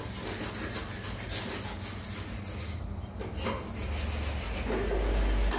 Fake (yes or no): no